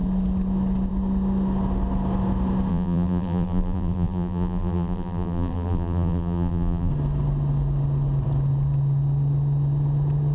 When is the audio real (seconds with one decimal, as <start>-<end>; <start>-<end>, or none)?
0.0-2.7; 6.9-10.3